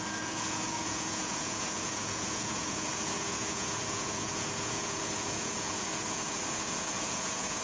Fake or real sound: fake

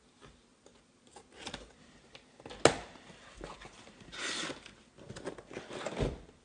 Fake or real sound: real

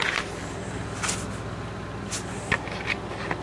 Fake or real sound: real